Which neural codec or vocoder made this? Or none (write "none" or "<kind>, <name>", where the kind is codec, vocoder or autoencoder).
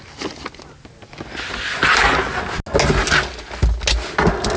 none